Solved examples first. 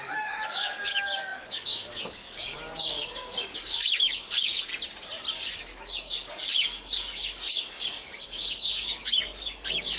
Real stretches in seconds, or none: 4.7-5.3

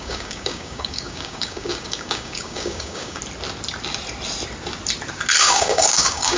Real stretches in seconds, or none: 3.2-5.4

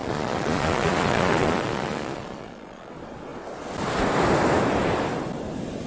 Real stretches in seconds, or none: 2.9-5.9

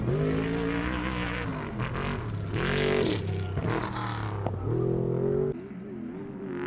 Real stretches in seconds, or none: 0.0-6.7

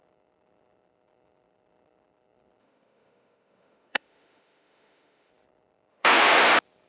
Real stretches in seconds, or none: 0.0-2.6; 5.3-5.9; 6.4-6.9